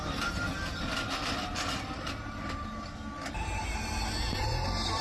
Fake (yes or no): no